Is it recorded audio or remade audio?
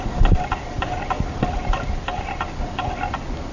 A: recorded